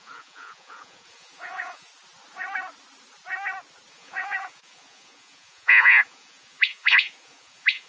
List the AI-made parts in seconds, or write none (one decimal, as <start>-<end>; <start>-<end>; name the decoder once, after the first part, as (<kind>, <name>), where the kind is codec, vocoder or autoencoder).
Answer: 0.0-1.9 (vocoder, Vocos); 3.9-7.9